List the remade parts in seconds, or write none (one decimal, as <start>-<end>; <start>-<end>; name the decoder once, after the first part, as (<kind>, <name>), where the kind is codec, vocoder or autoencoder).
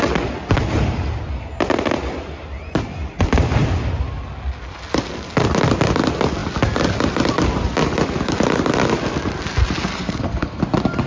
9.9-10.6 (codec, SNAC)